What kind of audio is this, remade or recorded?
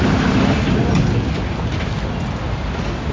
recorded